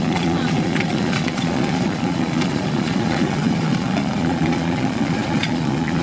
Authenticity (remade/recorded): remade